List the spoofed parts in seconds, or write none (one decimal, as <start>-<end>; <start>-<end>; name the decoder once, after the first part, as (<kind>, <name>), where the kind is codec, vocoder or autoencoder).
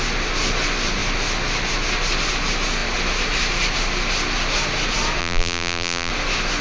5.2-6.1 (vocoder, BigVGAN v2)